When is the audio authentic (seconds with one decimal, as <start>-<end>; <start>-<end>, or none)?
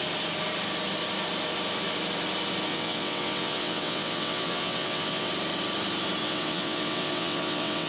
0.0-2.7; 5.3-6.2